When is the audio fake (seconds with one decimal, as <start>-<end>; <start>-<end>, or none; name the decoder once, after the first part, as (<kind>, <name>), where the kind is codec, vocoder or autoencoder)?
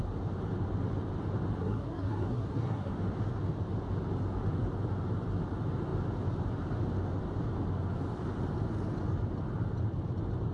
1.6-2.9 (codec, SNAC)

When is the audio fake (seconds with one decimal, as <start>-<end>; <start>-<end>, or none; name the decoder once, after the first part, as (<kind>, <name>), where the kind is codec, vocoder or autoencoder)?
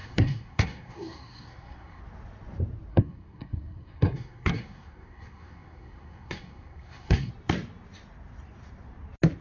0.0-2.0 (codec, SNAC); 2.9-7.3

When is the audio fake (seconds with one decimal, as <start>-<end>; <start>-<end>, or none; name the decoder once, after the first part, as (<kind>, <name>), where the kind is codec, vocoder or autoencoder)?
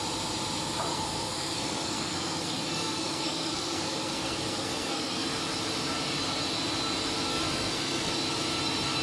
0.9-5.4 (codec, SNAC); 7.3-8.1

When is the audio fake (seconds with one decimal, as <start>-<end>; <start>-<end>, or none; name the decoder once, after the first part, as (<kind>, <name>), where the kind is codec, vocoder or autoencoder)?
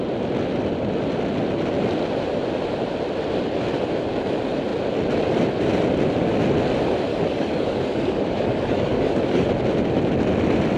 7.1-9.5 (codec, DAC)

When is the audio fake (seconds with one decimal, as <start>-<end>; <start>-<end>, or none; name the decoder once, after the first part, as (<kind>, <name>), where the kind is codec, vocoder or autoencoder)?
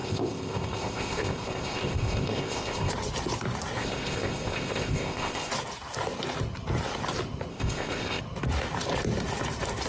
0.0-2.9 (codec, ZipCodec); 3.8-5.5; 7.5-8.2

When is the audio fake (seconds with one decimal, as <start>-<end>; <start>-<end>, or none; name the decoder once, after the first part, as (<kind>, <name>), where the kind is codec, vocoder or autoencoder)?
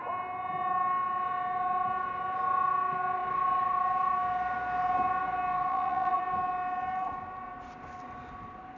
5.7-6.2 (vocoder, Vocos)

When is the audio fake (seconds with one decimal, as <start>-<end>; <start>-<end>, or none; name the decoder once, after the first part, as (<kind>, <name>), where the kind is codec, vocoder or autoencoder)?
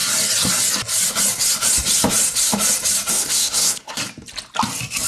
3.1-4.0 (codec, SNAC)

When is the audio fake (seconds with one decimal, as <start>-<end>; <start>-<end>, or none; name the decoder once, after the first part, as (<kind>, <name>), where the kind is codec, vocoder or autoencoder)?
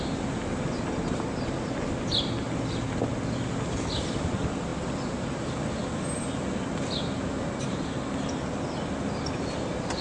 none